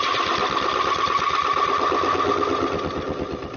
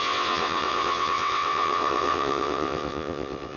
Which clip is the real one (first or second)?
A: first